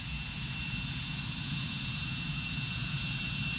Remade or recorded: remade